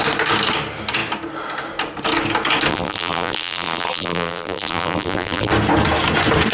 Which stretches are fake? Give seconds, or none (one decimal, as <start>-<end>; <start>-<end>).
2.7-5.5